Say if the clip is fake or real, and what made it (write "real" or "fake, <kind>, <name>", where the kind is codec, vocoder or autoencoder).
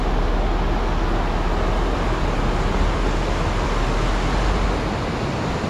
real